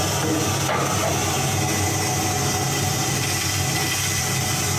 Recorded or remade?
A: recorded